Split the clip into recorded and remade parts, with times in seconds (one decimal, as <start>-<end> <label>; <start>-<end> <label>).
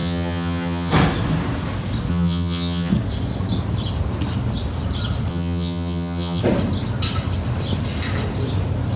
0.0-0.9 remade; 0.9-2.1 recorded; 2.1-2.9 remade; 2.9-5.3 recorded; 5.3-6.4 remade; 6.4-9.0 recorded